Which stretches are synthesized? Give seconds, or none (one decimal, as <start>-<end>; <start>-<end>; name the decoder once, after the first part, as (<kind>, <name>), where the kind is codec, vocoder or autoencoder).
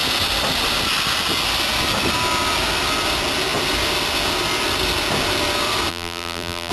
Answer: 5.9-6.7 (vocoder, BigVGAN v2)